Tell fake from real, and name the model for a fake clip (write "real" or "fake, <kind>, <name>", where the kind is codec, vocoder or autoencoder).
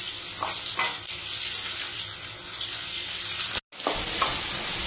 real